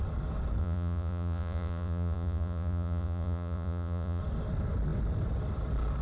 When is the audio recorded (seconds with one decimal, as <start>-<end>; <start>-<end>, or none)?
0.0-0.6; 4.2-6.0